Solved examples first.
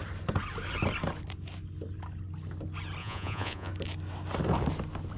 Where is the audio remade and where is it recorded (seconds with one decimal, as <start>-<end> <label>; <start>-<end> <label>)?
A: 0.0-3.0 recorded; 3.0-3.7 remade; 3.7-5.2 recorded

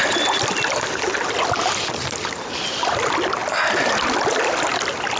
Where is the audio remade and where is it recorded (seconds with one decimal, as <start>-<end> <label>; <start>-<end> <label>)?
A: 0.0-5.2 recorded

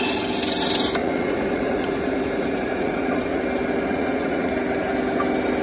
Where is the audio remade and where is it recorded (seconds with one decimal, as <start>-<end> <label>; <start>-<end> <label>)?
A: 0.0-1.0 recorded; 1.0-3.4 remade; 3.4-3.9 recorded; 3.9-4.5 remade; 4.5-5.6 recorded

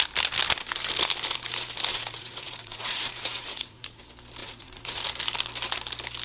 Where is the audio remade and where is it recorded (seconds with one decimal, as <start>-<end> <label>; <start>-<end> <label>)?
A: 0.0-1.9 recorded; 1.9-4.0 remade; 4.0-4.4 recorded; 4.4-5.0 remade; 5.0-6.2 recorded

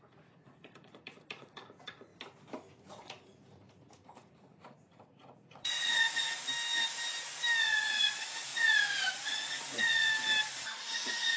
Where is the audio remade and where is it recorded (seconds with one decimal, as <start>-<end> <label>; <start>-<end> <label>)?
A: 0.0-2.1 remade; 2.1-2.8 recorded; 2.8-6.3 remade; 6.3-7.6 recorded; 7.6-10.1 remade; 10.1-10.8 recorded; 10.8-11.4 remade

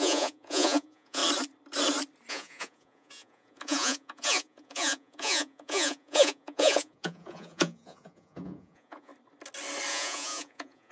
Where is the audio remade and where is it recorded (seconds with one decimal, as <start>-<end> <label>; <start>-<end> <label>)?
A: 0.0-1.2 remade; 1.2-2.3 recorded; 2.3-9.1 remade; 9.1-9.9 recorded; 9.9-10.9 remade

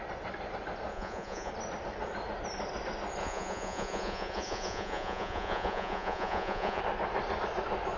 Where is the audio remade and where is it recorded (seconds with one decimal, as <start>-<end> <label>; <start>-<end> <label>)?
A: 0.0-0.9 recorded; 0.9-1.5 remade; 1.5-3.2 recorded; 3.2-6.8 remade; 6.8-8.0 recorded